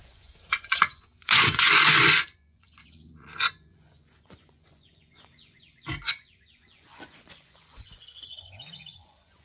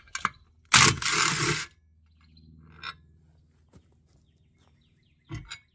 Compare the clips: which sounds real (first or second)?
second